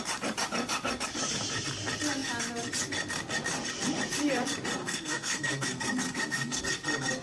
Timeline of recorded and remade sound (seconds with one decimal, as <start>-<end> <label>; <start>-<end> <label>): 0.0-4.8 recorded; 4.8-6.6 remade; 6.6-7.2 recorded